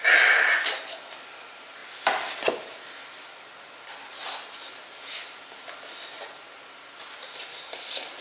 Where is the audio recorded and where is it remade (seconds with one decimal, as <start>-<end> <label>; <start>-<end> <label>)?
0.0-8.2 recorded